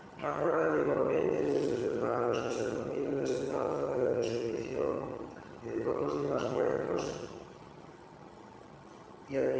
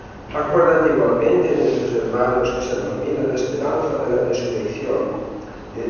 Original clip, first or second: second